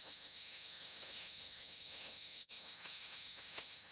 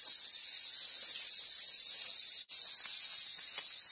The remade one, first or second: first